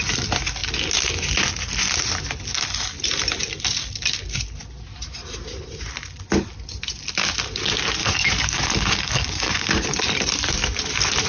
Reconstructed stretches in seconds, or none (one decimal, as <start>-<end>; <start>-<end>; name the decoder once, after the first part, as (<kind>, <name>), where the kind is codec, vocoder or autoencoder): 8.0-9.7 (codec, DAC)